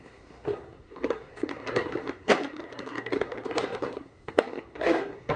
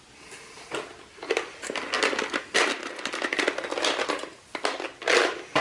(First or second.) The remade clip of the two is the first